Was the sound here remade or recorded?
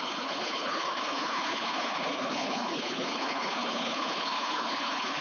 remade